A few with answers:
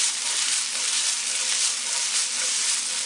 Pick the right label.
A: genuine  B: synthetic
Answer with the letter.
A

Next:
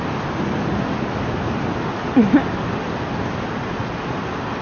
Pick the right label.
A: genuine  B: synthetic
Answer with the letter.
A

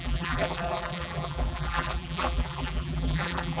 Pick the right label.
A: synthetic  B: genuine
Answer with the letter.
A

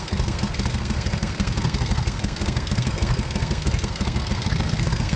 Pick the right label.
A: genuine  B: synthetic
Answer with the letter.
B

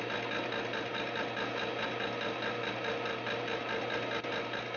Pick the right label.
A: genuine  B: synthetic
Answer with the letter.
A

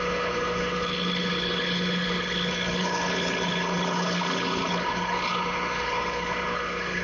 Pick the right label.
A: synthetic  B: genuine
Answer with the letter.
A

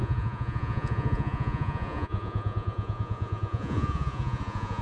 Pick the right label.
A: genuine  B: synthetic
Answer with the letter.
B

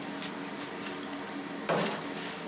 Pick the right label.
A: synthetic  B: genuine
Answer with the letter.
B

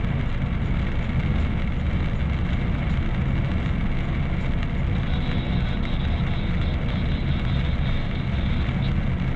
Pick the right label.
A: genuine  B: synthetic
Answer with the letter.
A